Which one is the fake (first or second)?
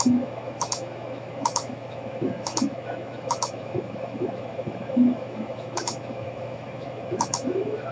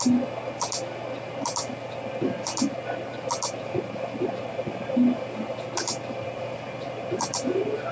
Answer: first